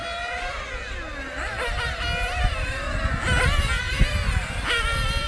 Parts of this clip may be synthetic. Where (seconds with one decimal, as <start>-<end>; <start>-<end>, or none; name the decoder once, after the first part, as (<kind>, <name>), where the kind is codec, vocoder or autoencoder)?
4.4-5.3 (vocoder, BigVGAN v2)